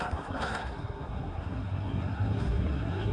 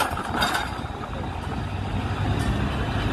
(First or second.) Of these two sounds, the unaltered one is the second